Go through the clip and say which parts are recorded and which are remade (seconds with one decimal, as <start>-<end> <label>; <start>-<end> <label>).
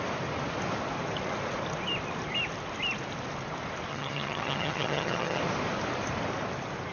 0.0-3.9 recorded; 3.9-5.4 remade; 5.4-6.9 recorded